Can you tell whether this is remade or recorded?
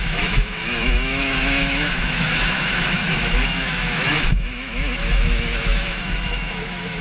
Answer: remade